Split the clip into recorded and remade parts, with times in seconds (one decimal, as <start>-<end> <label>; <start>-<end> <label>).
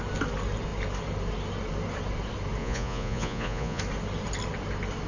0.0-2.6 recorded; 2.6-3.8 remade; 3.8-5.1 recorded